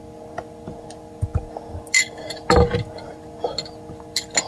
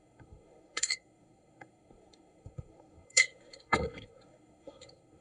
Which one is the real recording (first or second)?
first